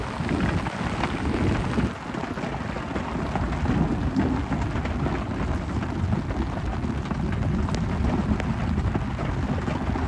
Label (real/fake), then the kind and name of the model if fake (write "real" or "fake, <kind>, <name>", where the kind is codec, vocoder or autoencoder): real